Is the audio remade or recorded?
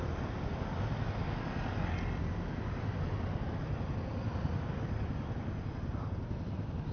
recorded